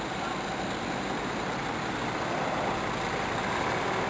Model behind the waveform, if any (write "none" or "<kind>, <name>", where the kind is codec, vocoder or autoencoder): none